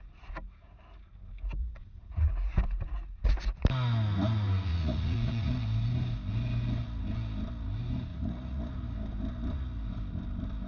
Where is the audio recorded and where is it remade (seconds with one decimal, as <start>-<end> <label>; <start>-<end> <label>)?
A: 0.0-1.6 recorded; 1.6-2.3 remade; 2.3-4.7 recorded; 4.7-5.5 remade; 5.5-8.1 recorded; 8.1-8.6 remade; 8.6-10.7 recorded